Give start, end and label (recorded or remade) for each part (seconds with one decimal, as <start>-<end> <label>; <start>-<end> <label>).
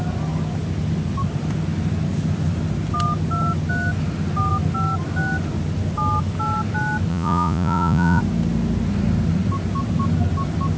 0.0-7.1 recorded; 7.1-8.2 remade; 8.2-10.8 recorded